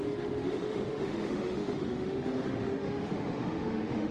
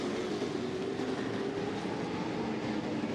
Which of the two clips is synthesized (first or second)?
first